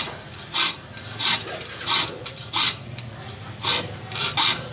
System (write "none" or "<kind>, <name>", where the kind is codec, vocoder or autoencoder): none